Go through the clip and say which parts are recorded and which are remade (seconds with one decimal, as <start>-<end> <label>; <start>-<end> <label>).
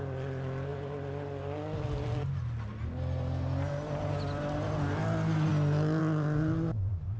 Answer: 0.0-7.2 recorded